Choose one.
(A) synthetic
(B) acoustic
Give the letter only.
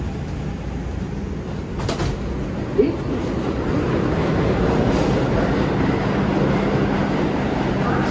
B